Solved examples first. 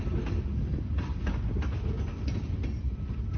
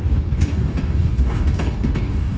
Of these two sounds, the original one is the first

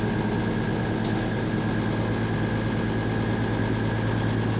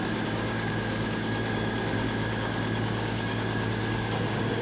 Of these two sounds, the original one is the first